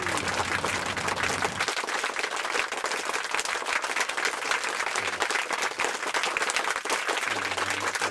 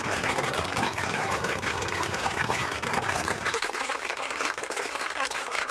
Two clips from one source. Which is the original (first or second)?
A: first